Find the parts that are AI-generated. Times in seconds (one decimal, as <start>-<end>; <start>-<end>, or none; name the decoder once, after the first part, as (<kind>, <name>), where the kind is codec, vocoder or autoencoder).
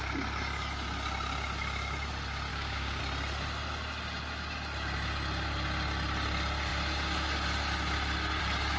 2.5-3.0 (codec, DAC)